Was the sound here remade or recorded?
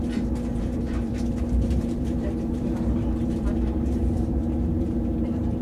remade